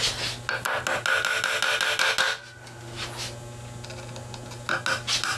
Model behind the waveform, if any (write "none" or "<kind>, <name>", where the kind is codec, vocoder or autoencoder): none